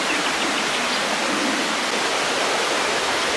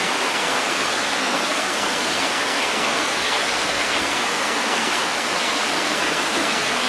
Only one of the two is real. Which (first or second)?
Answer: first